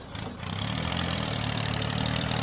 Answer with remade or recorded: remade